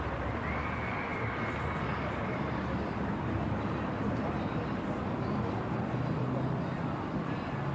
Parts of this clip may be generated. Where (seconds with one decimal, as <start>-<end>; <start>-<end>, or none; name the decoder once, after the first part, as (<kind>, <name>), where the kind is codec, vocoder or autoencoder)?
none